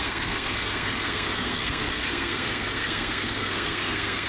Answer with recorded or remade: remade